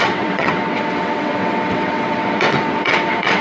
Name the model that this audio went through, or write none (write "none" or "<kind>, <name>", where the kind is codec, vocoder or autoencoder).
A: vocoder, WaveNeXt